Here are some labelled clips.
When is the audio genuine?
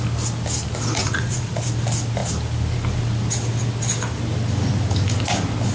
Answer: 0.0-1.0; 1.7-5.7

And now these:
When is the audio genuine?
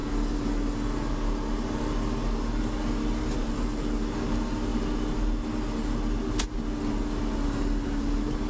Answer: 0.0-8.5